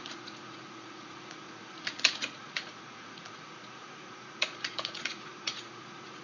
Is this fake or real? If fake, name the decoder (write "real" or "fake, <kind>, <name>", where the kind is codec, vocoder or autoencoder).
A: fake, vocoder, Vocos